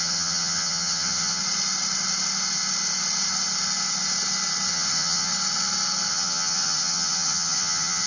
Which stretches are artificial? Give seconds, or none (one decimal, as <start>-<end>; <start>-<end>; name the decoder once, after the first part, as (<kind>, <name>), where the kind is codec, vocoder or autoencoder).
0.0-1.4 (vocoder, HiFi-GAN); 4.7-5.3; 6.1-8.1